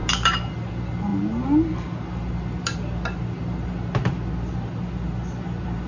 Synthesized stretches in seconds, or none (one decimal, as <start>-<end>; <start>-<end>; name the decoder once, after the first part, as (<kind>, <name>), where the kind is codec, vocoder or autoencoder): none